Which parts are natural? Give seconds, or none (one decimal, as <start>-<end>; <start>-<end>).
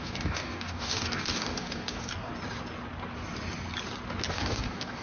2.3-4.3